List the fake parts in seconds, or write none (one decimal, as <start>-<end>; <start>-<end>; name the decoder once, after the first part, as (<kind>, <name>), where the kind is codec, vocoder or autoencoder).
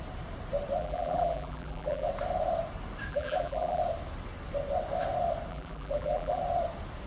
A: 0.8-2.1 (vocoder, BigVGAN v2); 3.1-3.8; 5.5-6.4